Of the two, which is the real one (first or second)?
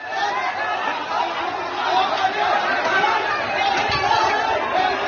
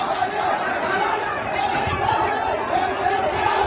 first